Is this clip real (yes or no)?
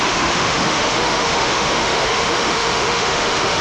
no